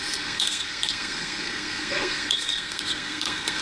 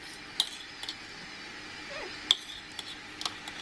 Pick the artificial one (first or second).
first